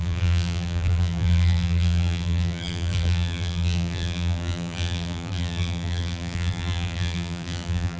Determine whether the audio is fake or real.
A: fake